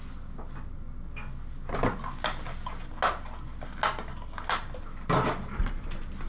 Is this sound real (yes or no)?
yes